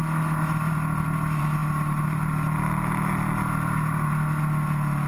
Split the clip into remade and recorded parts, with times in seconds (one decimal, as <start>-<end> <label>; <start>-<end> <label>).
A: 0.0-5.1 recorded